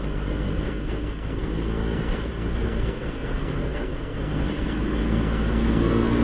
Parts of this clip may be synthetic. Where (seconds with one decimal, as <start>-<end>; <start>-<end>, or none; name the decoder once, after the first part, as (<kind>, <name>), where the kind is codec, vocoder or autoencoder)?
0.0-6.2 (codec, SNAC)